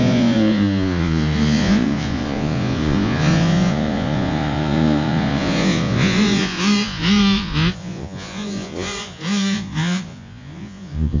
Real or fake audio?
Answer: fake